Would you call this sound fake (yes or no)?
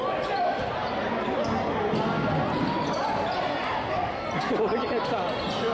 no